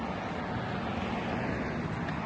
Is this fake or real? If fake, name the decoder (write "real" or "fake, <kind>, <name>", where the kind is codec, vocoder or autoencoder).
real